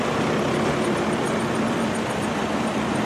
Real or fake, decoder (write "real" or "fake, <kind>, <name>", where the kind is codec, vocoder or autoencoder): fake, vocoder, BigVGAN v2